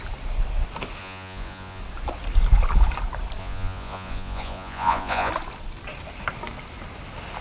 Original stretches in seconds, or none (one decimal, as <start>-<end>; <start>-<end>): 0.0-1.0; 1.8-3.4; 5.3-7.4